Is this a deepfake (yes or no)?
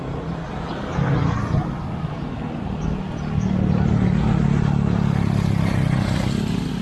no